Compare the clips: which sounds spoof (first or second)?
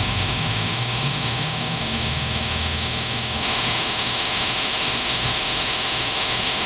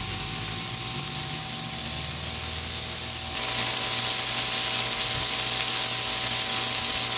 first